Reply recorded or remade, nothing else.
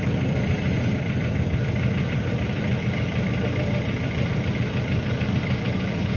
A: remade